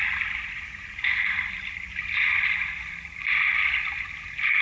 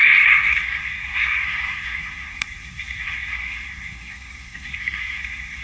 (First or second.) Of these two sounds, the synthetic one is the second